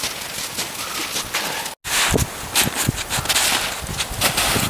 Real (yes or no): yes